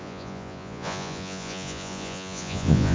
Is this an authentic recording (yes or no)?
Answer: no